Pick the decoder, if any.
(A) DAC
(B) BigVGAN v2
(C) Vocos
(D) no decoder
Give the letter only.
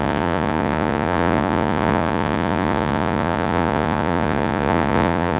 C